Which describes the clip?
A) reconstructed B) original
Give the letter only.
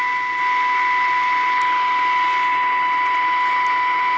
B